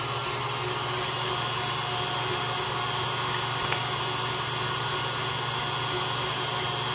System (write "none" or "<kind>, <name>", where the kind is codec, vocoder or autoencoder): none